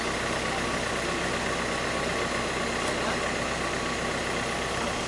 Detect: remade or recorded recorded